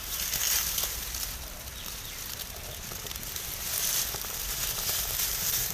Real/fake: real